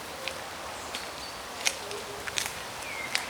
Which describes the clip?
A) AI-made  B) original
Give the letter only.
A